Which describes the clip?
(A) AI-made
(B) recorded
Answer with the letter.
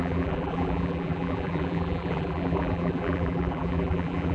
A